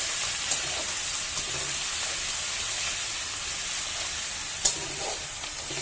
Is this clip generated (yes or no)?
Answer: no